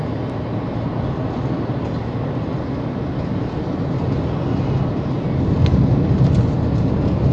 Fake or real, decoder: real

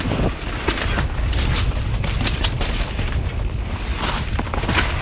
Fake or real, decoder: real